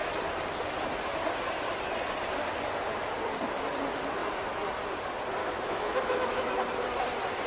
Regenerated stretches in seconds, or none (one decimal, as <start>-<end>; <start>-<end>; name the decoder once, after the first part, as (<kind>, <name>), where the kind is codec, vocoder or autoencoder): 5.4-6.5 (autoencoder, DAC-VAE)

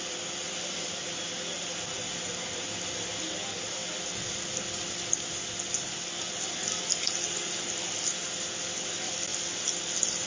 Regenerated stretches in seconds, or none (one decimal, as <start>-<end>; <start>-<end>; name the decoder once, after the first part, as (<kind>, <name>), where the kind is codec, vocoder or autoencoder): none

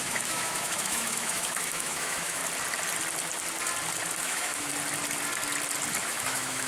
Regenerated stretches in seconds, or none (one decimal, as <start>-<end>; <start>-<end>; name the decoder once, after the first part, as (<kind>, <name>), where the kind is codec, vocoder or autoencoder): 0.0-2.4 (autoencoder, DAC-VAE); 4.2-4.7; 6.0-6.7

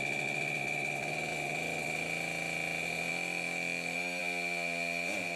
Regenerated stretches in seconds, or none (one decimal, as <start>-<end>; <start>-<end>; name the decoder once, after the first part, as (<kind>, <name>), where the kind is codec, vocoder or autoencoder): 3.1-4.2 (autoencoder, DAC-VAE)